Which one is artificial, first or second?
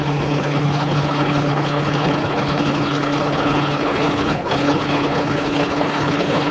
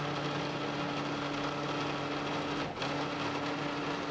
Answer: first